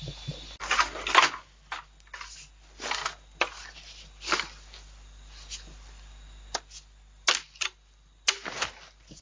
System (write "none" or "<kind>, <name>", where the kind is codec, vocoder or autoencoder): none